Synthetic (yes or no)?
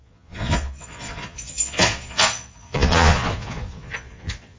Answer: yes